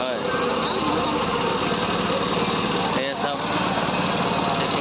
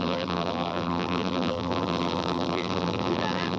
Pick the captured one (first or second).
first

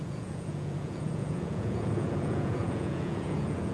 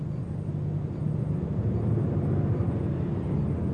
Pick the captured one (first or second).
second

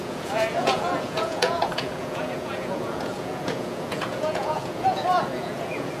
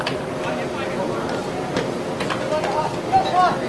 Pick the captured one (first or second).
second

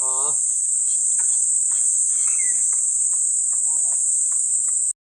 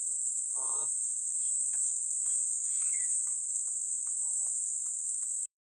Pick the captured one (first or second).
first